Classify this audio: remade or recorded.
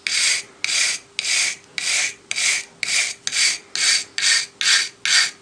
recorded